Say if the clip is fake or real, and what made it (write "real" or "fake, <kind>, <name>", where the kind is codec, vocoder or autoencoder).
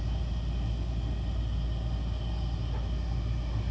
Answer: real